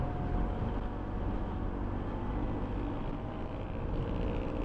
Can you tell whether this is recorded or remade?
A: recorded